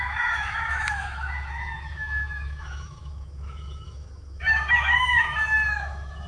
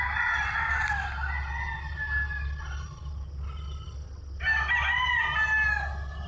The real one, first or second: second